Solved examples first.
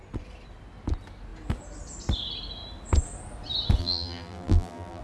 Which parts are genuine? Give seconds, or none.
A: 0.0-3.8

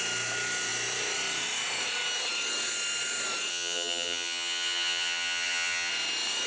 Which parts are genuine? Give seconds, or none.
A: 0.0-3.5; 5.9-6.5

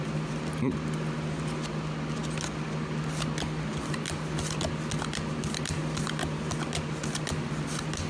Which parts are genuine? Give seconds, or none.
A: 0.0-8.1